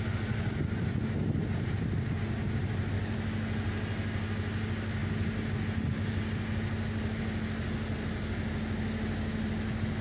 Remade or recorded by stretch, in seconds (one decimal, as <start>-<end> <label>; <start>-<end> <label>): 0.0-10.0 recorded